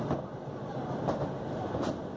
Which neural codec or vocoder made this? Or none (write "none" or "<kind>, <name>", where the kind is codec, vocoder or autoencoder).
none